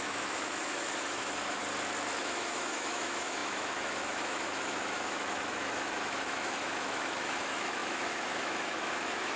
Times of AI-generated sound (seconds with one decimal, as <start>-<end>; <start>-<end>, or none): 0.0-1.6; 2.2-9.4